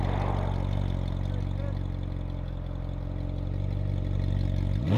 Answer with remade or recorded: recorded